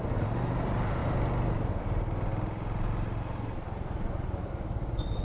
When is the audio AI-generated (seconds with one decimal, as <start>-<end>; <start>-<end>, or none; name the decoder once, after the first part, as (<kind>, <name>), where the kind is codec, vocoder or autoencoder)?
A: none